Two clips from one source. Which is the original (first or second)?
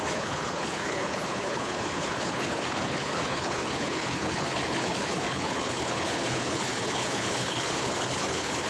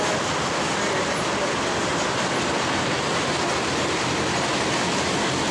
second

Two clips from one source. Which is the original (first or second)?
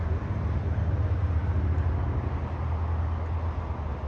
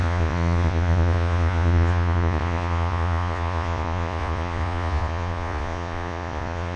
first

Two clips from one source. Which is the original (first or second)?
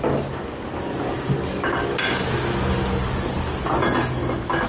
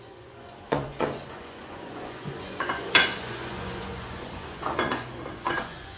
first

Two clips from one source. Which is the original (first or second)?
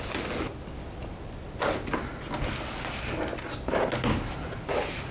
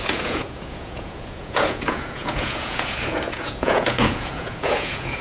first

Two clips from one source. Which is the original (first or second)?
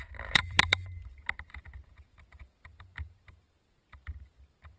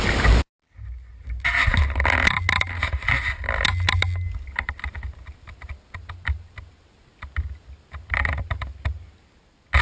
second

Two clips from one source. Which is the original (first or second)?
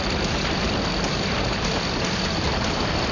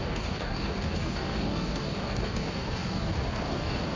first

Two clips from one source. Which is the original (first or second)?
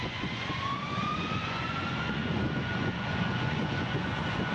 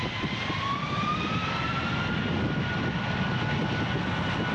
second